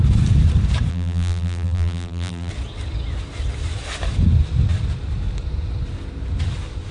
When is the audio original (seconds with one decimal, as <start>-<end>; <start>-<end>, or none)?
0.0-0.9; 2.5-6.9